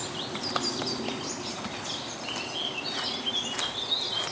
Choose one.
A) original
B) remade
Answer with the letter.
A